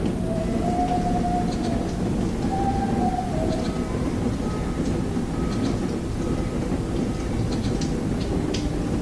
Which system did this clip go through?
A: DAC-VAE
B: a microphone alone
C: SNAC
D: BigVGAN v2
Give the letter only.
B